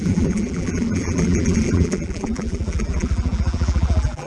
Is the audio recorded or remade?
remade